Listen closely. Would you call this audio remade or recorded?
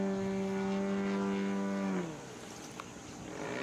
recorded